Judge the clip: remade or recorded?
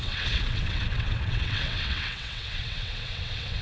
remade